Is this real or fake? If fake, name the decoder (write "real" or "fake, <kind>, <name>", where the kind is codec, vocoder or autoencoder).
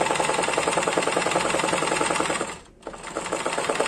real